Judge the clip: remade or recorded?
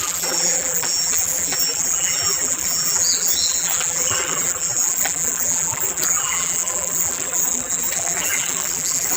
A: remade